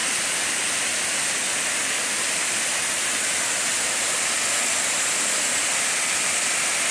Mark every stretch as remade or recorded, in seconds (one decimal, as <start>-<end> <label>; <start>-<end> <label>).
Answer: 0.0-6.9 recorded